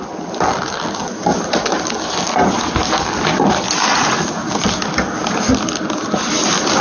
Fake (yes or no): no